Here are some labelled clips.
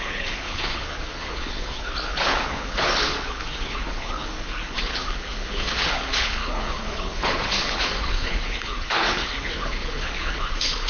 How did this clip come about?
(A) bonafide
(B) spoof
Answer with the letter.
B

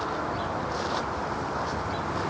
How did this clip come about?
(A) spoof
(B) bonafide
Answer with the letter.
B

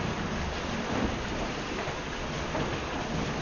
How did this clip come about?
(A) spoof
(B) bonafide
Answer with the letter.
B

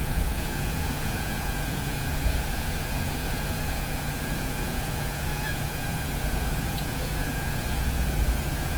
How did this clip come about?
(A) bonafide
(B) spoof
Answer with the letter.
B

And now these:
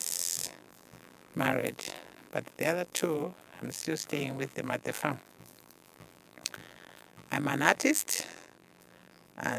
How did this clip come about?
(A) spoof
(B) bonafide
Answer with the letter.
A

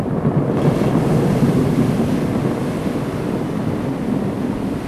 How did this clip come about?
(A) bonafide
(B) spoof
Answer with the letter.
A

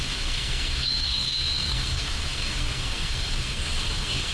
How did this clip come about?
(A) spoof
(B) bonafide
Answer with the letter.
A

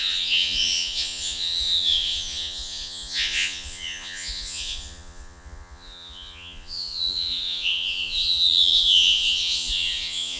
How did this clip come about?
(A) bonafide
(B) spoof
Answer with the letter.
B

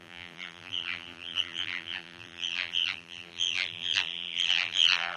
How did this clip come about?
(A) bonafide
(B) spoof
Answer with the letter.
B